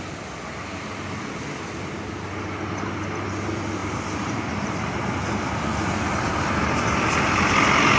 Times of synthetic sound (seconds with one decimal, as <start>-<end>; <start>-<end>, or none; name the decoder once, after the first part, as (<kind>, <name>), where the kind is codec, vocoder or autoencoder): 3.8-5.7 (vocoder, BigVGAN v2)